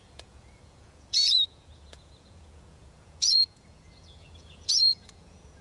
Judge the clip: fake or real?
fake